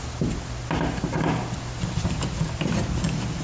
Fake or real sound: real